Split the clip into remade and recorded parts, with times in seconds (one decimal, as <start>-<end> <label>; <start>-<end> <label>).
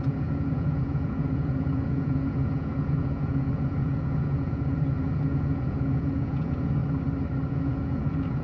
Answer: 0.0-6.8 remade; 6.8-7.5 recorded; 7.5-8.4 remade